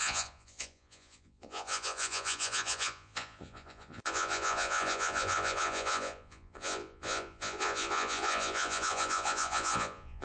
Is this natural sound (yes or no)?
no